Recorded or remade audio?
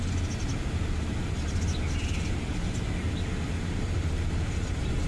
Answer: recorded